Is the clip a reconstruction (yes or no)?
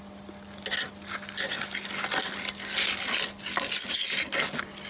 no